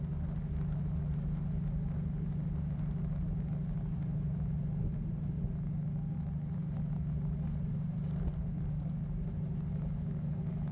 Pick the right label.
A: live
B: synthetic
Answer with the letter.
A